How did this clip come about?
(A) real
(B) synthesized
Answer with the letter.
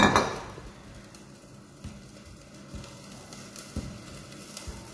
A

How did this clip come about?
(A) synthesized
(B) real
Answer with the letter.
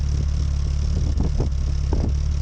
B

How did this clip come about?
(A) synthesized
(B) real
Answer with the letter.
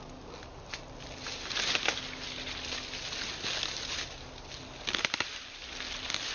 B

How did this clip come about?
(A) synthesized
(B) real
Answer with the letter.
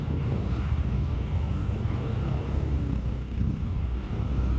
A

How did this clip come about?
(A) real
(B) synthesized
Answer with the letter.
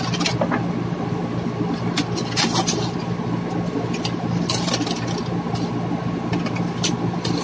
A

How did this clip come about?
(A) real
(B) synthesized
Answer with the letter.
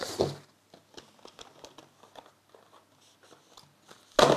A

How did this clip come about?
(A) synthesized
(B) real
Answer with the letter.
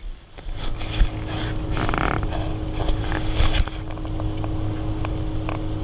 B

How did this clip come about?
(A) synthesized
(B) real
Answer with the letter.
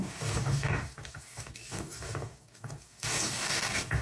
A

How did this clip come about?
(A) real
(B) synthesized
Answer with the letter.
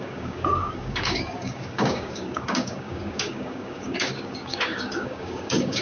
B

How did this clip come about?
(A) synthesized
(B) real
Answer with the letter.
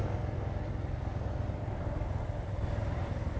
B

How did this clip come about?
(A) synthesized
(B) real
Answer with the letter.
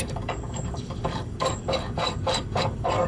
A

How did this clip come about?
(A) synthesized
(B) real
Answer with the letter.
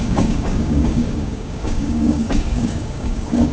A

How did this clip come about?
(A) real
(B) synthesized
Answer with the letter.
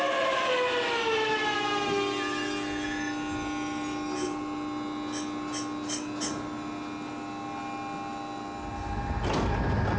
A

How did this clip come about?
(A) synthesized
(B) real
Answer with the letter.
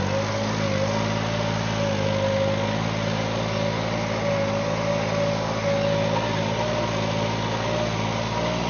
B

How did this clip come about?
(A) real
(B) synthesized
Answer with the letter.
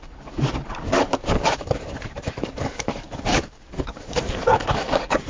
B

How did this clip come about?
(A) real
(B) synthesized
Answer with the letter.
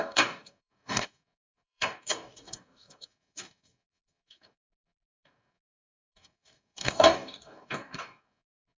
B